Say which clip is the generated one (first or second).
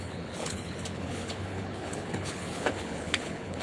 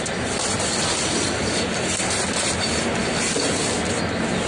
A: first